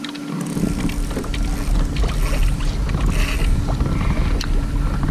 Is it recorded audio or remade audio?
recorded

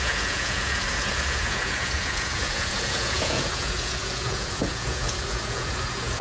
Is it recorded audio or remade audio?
remade